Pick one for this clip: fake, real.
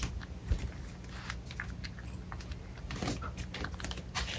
real